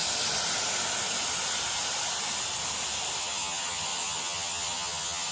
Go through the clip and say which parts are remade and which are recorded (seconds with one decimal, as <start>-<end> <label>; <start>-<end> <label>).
0.0-3.2 recorded; 3.2-5.3 remade